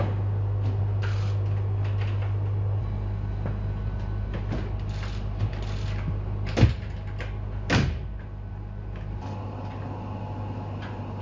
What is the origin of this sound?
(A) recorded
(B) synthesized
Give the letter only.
A